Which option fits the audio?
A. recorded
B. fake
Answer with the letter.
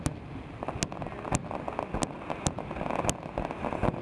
A